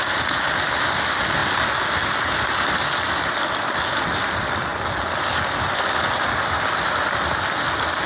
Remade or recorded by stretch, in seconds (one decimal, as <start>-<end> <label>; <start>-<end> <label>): 0.0-8.1 recorded